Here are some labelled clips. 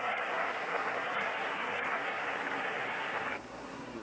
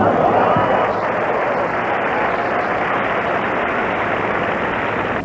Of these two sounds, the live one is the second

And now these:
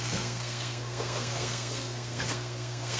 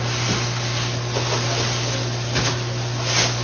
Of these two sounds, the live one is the second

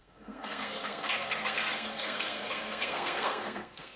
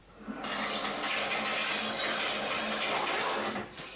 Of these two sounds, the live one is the second